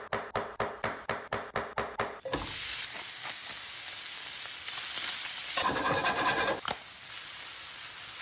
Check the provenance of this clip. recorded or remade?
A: recorded